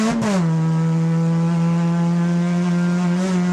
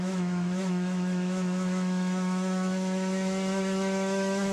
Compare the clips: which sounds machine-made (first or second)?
second